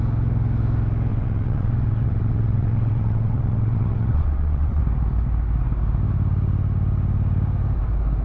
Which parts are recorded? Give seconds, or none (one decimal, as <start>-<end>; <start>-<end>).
0.0-1.1; 4.8-8.2